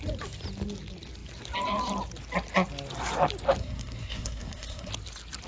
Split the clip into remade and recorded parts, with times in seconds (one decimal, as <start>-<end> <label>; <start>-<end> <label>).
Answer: 0.0-3.6 recorded; 3.6-4.9 remade; 4.9-5.5 recorded